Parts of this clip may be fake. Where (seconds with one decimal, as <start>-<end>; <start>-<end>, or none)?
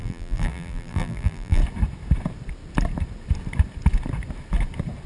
0.0-1.6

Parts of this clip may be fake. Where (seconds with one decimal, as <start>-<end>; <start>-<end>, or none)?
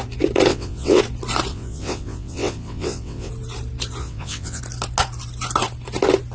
0.5-1.0; 1.5-3.3; 4.0-4.6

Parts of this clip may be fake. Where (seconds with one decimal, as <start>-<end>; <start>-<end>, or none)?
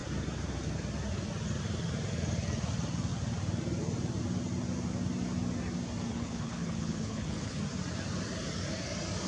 6.1-7.6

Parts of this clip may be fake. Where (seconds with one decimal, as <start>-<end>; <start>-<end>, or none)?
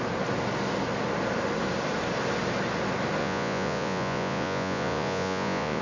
3.2-5.8